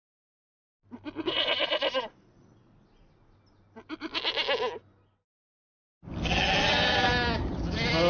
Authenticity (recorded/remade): recorded